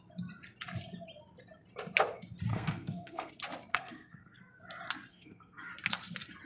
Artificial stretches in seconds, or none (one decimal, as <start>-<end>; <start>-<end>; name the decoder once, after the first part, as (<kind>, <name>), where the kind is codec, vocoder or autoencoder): 2.5-3.3 (codec, SNAC); 3.7-4.6; 5.1-5.7